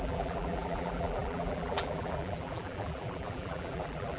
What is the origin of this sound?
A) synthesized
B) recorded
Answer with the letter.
A